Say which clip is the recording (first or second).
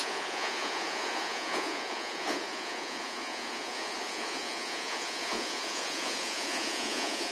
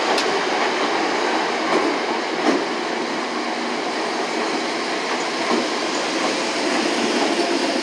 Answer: second